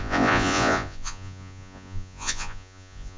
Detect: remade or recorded remade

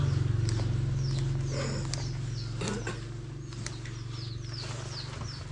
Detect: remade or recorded recorded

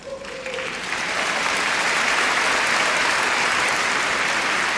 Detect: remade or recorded remade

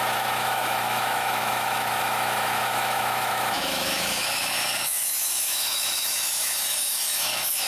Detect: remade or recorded remade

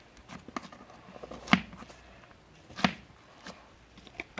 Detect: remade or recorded recorded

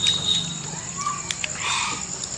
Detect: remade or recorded recorded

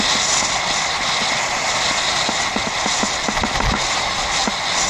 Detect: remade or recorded recorded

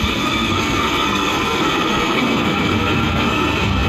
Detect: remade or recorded remade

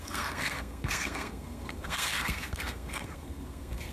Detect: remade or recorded remade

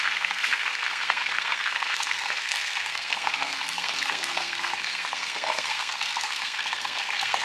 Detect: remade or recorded remade